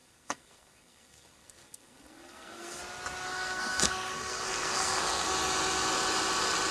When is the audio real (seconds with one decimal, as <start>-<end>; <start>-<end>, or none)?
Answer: 2.8-3.3; 5.3-6.7